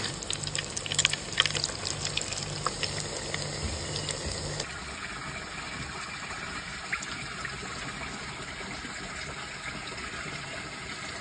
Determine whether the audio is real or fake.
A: real